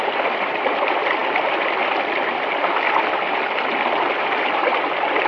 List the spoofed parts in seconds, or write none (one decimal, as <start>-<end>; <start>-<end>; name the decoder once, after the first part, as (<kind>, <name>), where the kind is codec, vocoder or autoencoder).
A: none